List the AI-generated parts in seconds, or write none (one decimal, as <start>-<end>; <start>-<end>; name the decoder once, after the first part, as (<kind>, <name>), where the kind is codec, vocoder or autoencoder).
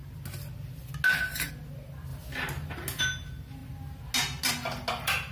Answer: none